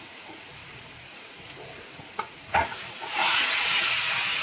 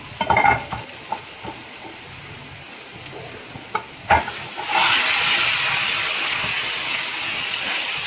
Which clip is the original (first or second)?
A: second